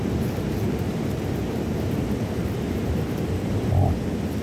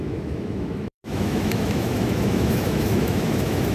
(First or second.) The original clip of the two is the first